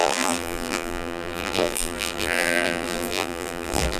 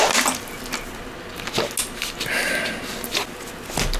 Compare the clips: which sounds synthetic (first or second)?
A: first